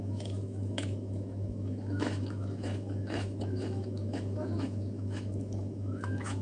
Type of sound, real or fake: fake